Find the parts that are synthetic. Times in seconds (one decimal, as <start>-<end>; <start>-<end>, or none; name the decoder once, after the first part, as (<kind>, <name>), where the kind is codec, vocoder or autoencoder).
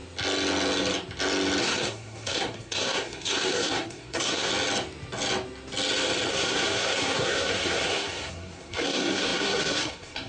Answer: 1.6-4.5 (codec, SNAC); 6.3-10.3